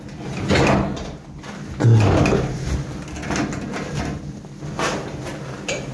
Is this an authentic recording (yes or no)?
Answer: yes